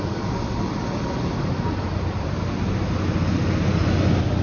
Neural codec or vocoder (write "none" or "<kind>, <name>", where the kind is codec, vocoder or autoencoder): none